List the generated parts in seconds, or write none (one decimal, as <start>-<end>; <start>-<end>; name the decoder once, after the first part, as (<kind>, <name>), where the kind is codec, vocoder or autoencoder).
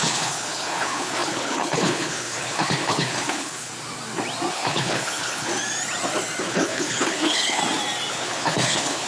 0.0-3.7 (codec, HILCodec); 4.5-5.5; 6.4-7.6; 8.1-9.1